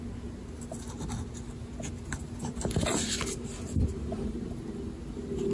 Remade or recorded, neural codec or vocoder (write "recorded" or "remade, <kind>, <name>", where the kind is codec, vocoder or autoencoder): recorded